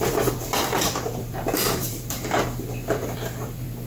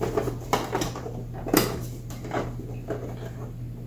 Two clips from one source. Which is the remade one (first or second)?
first